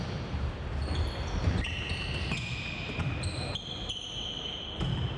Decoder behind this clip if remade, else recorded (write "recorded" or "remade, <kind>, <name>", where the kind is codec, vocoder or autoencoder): recorded